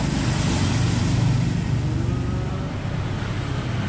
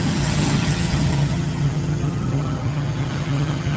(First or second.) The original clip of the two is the first